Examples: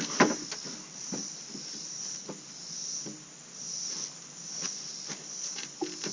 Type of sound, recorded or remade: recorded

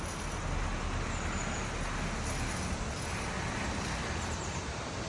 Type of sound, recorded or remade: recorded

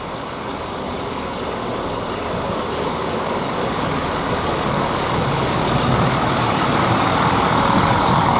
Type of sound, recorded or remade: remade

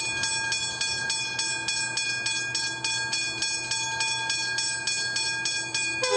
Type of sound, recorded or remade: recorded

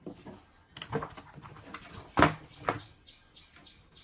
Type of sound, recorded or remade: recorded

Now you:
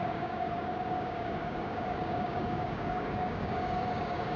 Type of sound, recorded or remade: remade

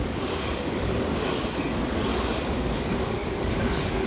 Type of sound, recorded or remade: remade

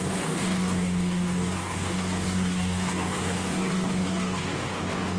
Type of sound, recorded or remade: remade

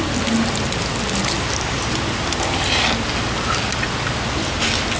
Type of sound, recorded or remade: recorded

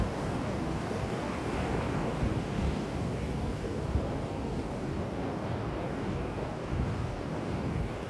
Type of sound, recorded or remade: remade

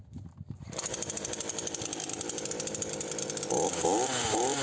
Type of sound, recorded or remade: recorded